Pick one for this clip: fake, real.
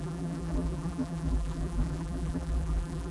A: fake